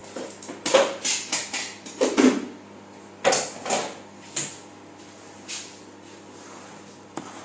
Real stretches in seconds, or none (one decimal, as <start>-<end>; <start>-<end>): 0.0-7.4